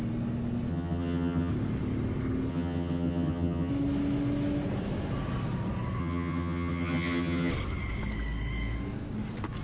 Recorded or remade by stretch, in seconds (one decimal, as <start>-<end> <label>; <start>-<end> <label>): 0.0-0.7 recorded; 0.7-1.5 remade; 1.5-2.5 recorded; 2.5-3.7 remade; 3.7-6.0 recorded; 6.0-7.5 remade; 7.5-9.6 recorded